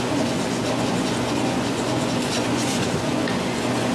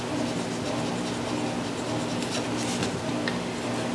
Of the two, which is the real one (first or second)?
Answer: second